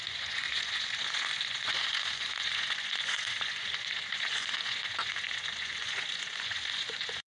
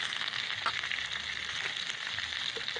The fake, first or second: first